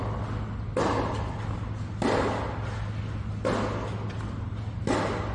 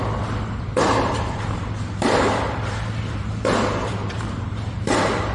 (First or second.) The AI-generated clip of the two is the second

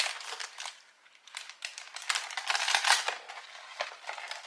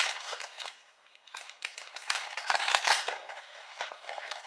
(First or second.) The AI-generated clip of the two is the second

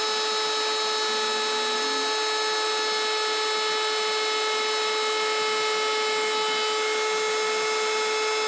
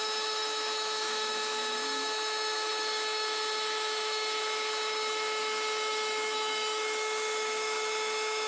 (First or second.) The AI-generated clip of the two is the second